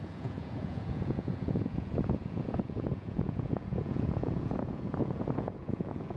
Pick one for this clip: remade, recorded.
remade